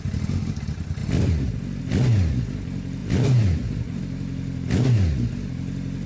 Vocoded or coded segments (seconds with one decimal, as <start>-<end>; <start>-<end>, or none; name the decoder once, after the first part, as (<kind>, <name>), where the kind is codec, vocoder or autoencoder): 3.0-4.0 (vocoder, BigVGAN v2)